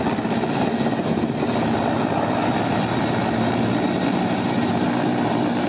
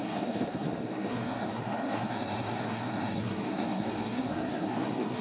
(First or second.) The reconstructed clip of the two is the second